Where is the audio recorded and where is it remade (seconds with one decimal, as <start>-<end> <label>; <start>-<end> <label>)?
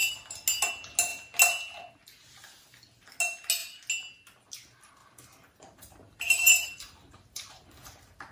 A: 0.0-5.0 recorded; 5.0-8.3 remade